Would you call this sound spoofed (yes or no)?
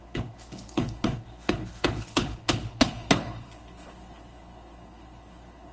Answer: yes